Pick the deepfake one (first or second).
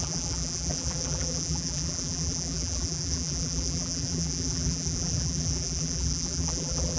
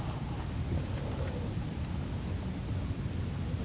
first